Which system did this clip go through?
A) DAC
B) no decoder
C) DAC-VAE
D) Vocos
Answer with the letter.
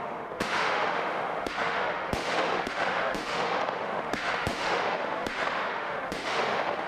C